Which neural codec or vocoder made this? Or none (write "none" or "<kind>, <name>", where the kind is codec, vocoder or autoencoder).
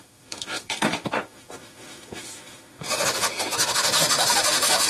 autoencoder, DAC-VAE